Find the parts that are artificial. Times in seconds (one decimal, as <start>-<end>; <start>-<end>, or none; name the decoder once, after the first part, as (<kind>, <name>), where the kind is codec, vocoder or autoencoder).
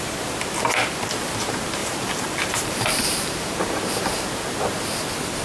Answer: 1.8-3.9 (vocoder, BigVGAN v2)